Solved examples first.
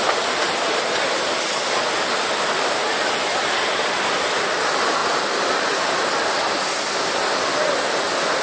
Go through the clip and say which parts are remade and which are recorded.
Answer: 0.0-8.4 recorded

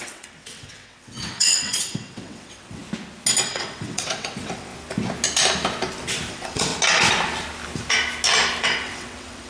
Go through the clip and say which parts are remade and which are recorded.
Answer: 0.0-2.8 remade; 2.8-3.5 recorded; 3.5-4.7 remade; 4.7-6.3 recorded; 6.3-6.7 remade; 6.7-8.6 recorded; 8.6-9.5 remade